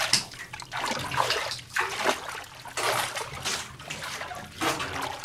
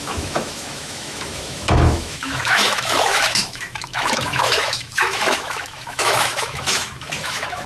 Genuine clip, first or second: first